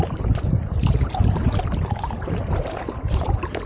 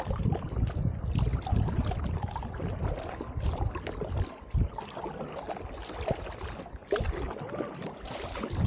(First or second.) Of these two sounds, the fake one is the first